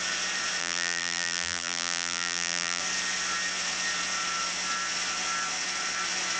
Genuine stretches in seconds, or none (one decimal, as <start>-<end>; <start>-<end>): 0.0-0.6; 2.8-6.4